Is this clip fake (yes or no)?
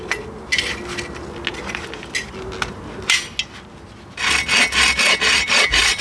no